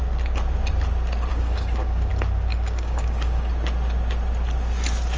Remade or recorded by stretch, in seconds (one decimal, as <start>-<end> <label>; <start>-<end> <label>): 0.0-1.3 recorded; 1.3-2.1 remade; 2.1-2.5 recorded; 2.5-3.5 remade; 3.5-5.2 recorded